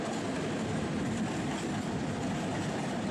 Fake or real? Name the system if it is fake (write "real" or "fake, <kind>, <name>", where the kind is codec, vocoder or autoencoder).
real